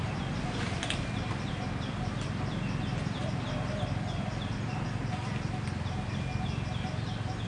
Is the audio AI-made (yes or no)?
no